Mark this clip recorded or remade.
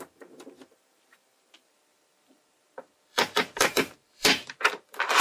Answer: remade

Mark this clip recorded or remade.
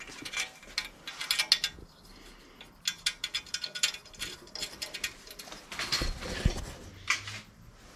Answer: recorded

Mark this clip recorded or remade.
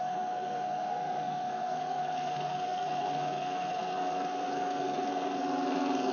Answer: remade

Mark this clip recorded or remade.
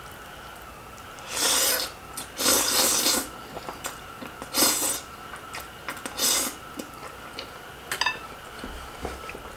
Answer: recorded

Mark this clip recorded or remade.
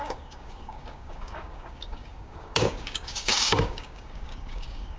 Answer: remade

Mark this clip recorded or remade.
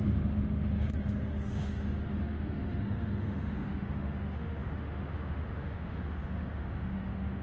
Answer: remade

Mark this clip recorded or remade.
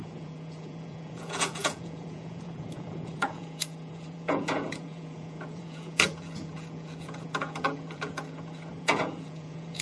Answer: remade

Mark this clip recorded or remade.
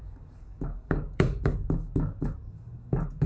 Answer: remade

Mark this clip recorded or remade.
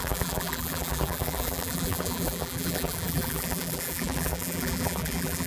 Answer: remade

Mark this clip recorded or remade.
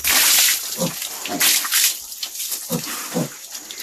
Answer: recorded